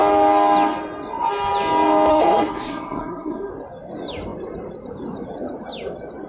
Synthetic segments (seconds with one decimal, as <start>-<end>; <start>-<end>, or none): 2.1-3.5